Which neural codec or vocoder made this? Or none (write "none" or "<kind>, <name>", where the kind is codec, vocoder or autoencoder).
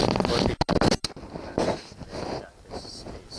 none